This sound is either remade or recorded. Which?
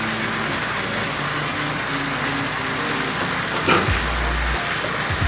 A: recorded